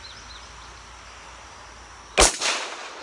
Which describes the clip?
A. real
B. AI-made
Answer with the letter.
A